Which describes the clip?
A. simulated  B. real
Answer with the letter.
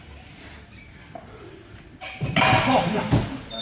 B